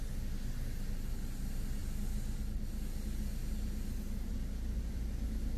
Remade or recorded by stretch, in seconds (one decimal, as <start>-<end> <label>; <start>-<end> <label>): 0.0-5.6 recorded